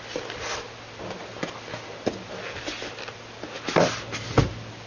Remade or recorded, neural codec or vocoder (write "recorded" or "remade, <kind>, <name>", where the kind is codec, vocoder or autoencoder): recorded